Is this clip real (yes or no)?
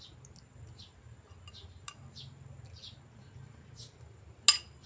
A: yes